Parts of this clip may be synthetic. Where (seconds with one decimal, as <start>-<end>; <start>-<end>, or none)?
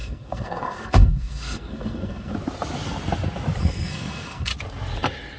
0.0-2.3; 3.6-4.5